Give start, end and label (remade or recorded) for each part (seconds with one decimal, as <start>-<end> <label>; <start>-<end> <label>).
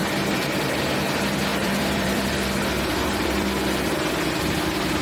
0.0-0.8 remade; 0.8-1.5 recorded; 1.5-4.1 remade; 4.1-5.0 recorded